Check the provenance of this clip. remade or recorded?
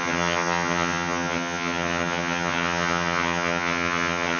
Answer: remade